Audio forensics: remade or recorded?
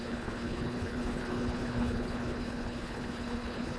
remade